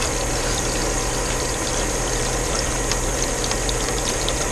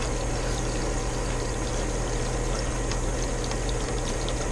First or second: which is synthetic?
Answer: first